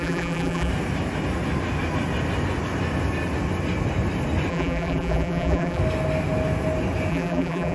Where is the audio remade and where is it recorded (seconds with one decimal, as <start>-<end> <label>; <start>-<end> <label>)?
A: 0.0-0.7 remade; 0.7-4.5 recorded; 4.5-5.8 remade; 5.8-7.1 recorded; 7.1-7.7 remade